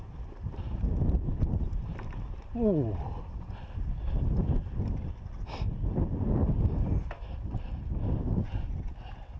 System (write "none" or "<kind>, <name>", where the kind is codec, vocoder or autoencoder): none